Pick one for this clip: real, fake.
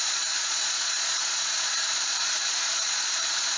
fake